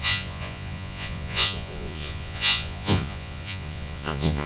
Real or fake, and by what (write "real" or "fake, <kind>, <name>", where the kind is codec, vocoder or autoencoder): fake, vocoder, Vocos